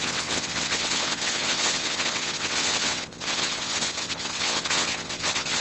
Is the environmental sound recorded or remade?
remade